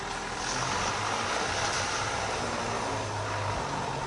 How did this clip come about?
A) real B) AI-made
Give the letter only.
A